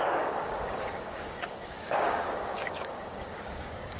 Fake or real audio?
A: fake